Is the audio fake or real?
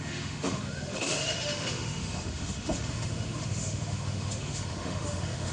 fake